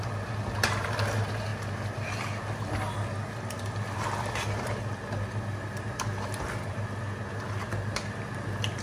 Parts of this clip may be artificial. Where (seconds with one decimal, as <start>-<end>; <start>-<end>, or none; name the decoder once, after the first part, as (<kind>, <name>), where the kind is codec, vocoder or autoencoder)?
none